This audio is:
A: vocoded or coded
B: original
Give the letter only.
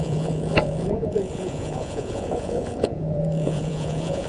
A